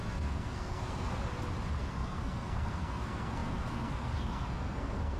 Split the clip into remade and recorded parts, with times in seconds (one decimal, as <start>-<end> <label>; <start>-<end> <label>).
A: 0.0-1.2 remade; 1.2-1.8 recorded; 1.8-5.2 remade